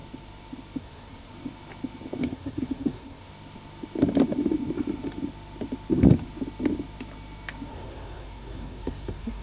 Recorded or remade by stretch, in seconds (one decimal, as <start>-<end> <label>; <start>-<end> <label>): 0.0-0.8 recorded; 0.8-1.3 remade; 1.3-2.2 recorded; 2.2-3.3 remade; 3.3-7.7 recorded; 7.7-9.4 remade